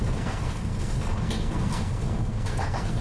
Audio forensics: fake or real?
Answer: fake